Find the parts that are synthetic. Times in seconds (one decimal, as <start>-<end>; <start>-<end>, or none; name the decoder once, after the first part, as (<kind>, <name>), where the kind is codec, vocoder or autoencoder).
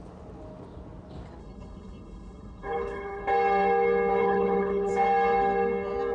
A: 1.4-3.2 (codec, HILCodec); 4.2-4.9